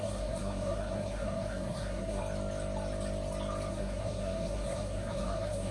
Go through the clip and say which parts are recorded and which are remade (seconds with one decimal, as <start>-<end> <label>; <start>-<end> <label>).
0.0-2.2 remade; 2.2-3.7 recorded; 3.7-5.7 remade